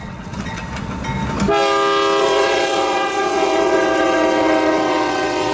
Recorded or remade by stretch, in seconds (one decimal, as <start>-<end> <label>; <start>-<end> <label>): 0.0-0.6 remade; 0.6-2.2 recorded; 2.2-5.5 remade